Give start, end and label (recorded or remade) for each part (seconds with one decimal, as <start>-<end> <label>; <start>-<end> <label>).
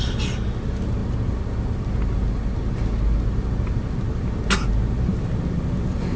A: 0.0-6.2 recorded